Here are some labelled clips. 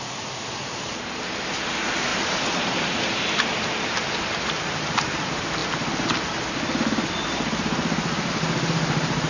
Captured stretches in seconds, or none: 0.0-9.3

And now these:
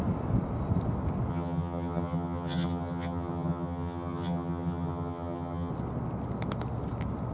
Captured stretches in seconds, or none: 0.0-1.3; 5.7-7.3

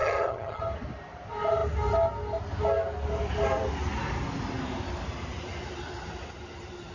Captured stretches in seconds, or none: 0.6-6.9